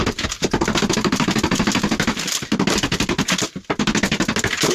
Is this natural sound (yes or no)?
yes